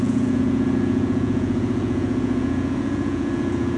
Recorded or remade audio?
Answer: remade